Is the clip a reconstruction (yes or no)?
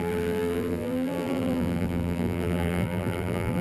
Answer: yes